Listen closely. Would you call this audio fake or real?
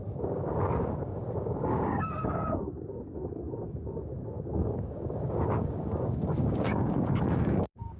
fake